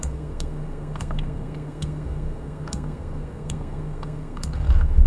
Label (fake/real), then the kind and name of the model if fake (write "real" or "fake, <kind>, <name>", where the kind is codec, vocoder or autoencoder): fake, codec, SNAC